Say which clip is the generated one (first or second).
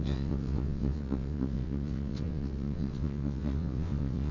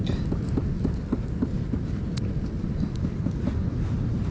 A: first